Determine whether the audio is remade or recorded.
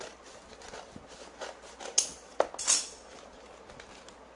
recorded